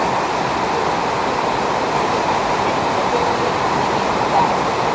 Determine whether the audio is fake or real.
real